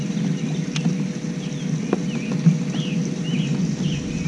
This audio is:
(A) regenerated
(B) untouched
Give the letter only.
B